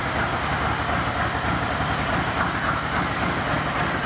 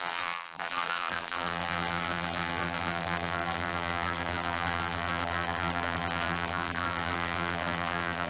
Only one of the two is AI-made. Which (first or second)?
second